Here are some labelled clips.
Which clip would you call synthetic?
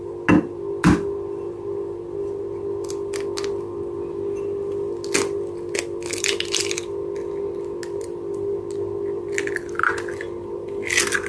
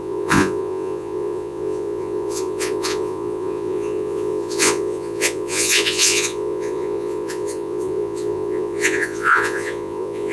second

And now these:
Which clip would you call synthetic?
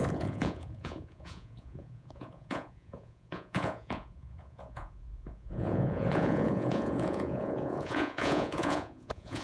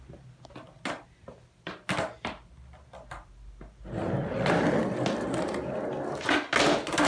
first